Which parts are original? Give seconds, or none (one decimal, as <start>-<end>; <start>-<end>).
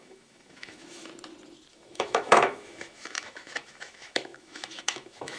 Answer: 1.1-1.7